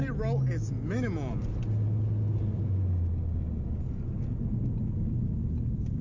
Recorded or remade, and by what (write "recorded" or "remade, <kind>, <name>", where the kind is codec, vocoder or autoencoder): recorded